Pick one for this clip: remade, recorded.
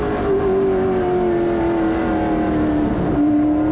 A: recorded